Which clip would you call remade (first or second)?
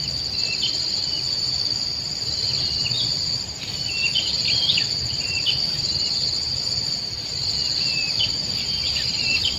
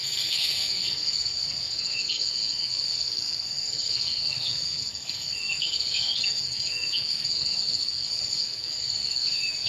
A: second